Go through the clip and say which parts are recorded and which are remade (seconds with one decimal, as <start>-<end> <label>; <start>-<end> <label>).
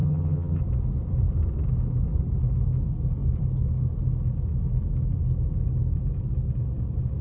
0.0-0.6 remade; 0.6-7.2 recorded